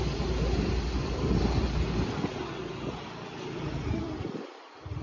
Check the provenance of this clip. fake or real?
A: real